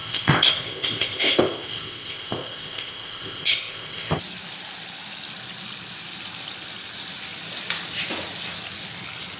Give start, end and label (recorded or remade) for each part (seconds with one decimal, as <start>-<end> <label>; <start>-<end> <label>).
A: 0.0-4.2 remade; 4.2-9.4 recorded

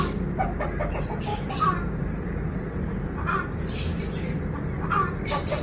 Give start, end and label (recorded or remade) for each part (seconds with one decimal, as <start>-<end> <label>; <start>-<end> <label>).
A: 0.0-1.3 recorded; 1.3-4.0 remade; 4.0-5.6 recorded

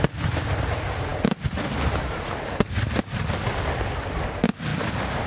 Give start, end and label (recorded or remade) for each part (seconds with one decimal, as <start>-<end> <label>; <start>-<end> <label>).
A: 0.0-5.3 recorded

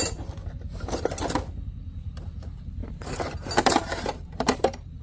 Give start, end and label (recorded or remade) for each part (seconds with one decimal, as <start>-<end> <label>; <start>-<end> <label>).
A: 0.0-2.8 recorded; 2.8-5.0 remade

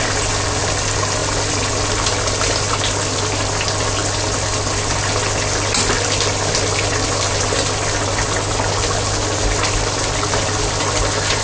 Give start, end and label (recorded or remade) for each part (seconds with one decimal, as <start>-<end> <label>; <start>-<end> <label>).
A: 0.0-11.4 recorded